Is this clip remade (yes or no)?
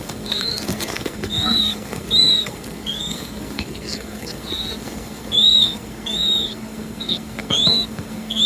yes